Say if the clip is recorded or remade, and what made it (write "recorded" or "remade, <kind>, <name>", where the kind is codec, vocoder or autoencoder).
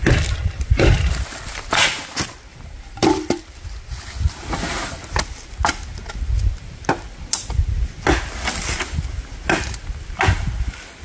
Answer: recorded